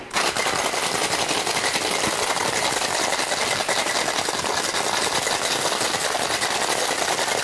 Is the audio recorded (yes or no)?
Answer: yes